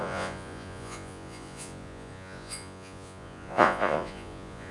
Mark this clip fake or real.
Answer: fake